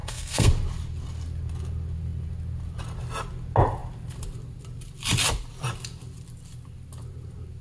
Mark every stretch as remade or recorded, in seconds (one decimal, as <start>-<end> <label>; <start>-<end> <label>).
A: 0.0-0.5 remade; 0.5-7.6 recorded